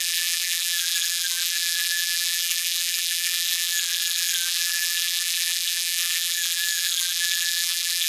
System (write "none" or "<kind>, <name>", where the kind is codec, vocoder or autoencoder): vocoder, BigVGAN v2